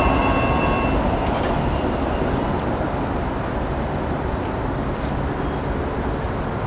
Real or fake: real